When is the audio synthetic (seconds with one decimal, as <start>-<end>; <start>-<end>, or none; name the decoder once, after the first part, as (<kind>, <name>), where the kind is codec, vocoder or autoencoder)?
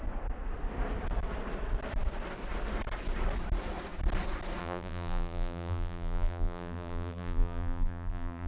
4.6-8.5 (vocoder, BigVGAN v2)